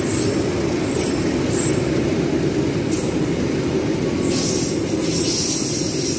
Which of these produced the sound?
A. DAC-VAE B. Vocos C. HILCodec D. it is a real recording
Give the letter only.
D